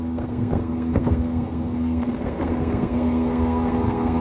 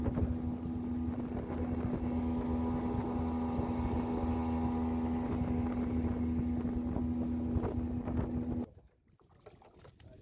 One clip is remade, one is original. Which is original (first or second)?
second